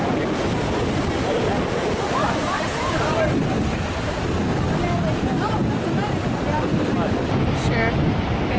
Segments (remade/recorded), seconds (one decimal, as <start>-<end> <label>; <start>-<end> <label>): 0.0-2.2 recorded; 2.2-2.9 remade; 2.9-3.4 recorded; 3.4-4.1 remade; 4.1-8.6 recorded